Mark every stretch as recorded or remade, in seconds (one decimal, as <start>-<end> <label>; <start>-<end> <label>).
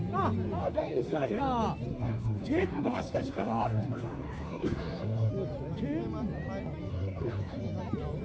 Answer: 0.0-0.6 recorded; 0.6-1.4 remade; 1.4-1.9 recorded; 1.9-5.3 remade; 5.3-6.9 recorded; 6.9-7.6 remade; 7.6-8.2 recorded